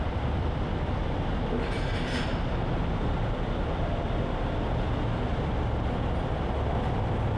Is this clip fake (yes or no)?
no